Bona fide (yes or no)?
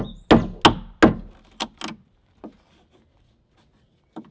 yes